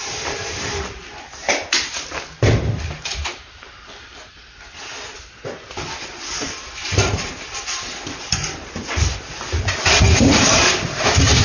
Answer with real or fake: fake